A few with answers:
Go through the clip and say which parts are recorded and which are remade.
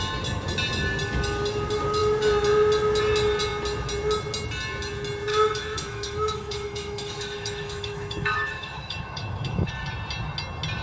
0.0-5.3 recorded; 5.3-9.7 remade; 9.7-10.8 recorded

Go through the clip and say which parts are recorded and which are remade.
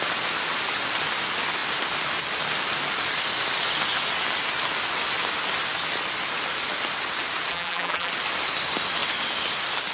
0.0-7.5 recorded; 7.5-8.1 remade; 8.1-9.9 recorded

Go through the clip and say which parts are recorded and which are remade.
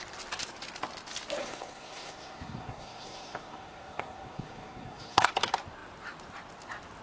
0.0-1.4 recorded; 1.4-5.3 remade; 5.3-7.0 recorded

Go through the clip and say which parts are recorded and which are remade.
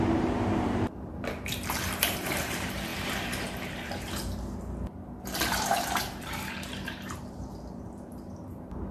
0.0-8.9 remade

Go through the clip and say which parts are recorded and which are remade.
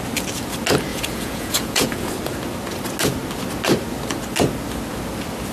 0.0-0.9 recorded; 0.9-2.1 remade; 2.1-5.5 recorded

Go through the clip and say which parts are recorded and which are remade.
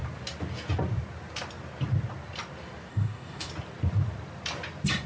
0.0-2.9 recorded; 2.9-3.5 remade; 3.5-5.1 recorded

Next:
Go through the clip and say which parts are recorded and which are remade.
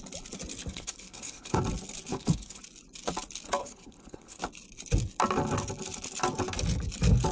0.0-0.7 recorded; 0.7-1.6 remade; 1.6-2.1 recorded; 2.1-2.6 remade; 2.6-3.6 recorded; 3.6-4.4 remade; 4.4-7.3 recorded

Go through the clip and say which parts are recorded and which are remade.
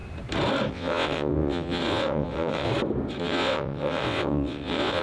0.0-0.7 recorded; 0.7-2.7 remade; 2.7-3.2 recorded; 3.2-5.0 remade